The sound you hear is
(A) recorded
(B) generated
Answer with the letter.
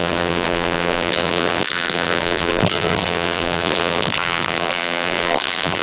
B